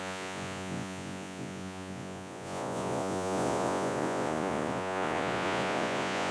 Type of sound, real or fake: fake